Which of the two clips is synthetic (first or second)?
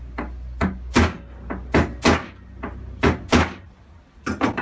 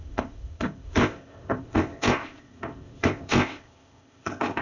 second